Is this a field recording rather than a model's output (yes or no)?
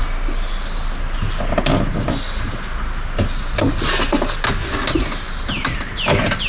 yes